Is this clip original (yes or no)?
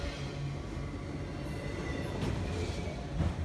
yes